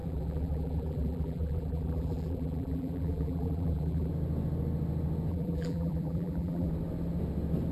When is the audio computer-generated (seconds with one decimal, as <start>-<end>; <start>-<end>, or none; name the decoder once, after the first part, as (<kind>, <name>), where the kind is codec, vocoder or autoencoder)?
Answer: 0.0-4.1 (vocoder, BigVGAN v2); 5.3-6.7